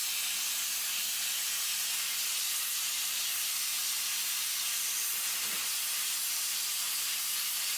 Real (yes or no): no